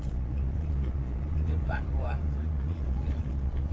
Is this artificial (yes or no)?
yes